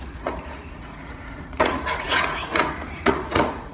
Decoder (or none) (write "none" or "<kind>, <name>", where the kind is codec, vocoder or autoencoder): vocoder, Vocos